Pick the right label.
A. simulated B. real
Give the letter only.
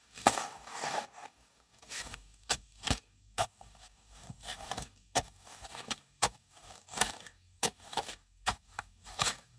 A